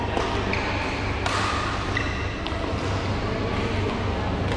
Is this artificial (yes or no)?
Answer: no